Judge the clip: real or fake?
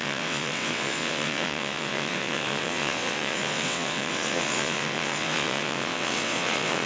fake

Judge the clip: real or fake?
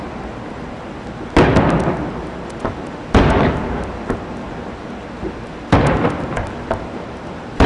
real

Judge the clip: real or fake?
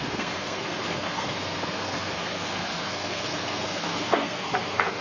fake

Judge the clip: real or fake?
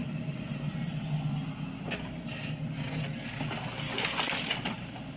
real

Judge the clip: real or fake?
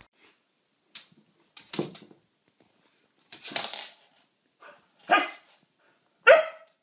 real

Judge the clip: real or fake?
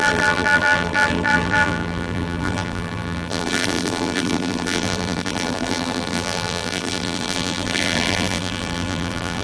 fake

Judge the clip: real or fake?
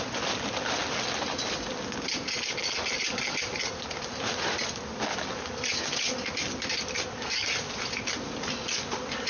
real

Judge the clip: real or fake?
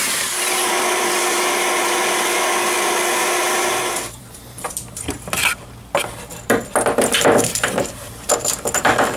fake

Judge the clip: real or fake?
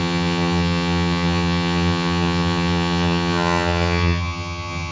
fake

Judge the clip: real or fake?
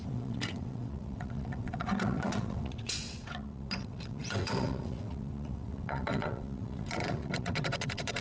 fake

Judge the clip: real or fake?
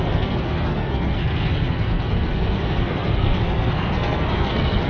fake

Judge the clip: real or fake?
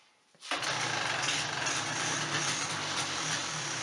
fake